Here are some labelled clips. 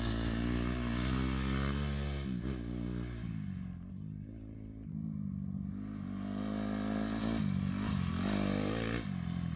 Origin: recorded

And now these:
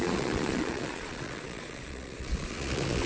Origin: remade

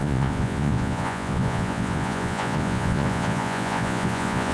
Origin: remade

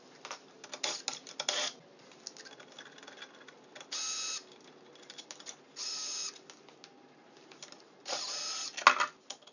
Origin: recorded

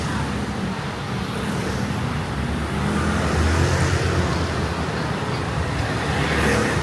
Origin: recorded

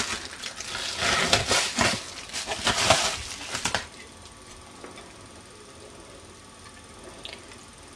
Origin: recorded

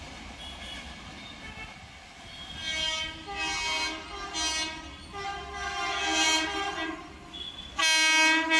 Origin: recorded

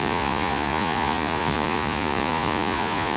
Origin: remade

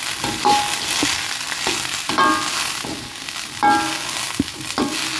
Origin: recorded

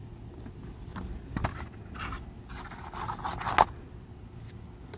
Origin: recorded